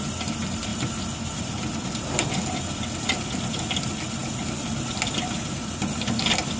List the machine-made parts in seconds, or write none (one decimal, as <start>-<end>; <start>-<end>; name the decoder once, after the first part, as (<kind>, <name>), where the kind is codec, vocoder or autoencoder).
0.0-4.2 (vocoder, BigVGAN v2); 5.4-6.6